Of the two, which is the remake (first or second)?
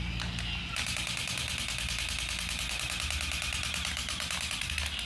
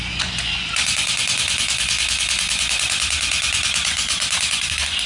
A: second